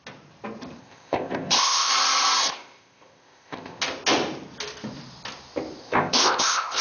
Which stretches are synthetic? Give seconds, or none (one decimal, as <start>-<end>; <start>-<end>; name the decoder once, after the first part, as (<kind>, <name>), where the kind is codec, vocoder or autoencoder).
0.8-1.9 (codec, ZipCodec); 2.5-3.8; 5.8-6.8